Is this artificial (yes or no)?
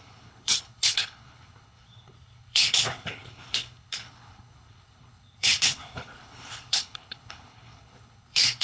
yes